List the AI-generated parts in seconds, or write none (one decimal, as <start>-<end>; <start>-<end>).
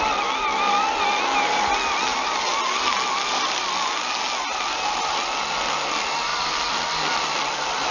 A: none